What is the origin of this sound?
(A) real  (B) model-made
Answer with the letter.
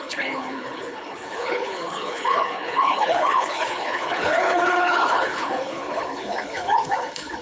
B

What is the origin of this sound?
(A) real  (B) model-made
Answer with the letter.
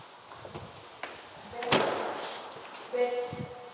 A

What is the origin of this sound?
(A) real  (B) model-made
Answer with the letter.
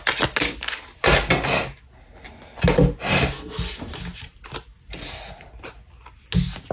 A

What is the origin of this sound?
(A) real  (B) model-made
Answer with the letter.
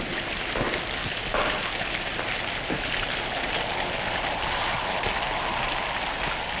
A